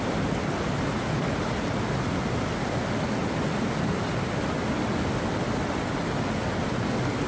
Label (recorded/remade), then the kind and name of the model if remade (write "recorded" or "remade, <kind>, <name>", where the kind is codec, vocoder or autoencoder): recorded